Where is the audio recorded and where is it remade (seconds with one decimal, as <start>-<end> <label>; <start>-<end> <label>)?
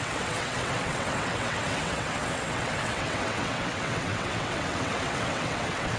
0.0-6.0 remade